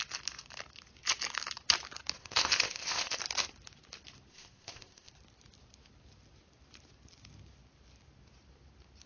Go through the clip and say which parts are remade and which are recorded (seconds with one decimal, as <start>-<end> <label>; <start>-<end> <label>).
0.0-2.2 recorded; 2.2-3.2 remade; 3.2-4.3 recorded; 4.3-5.1 remade; 5.1-9.1 recorded